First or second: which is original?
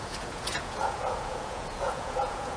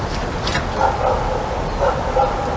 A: second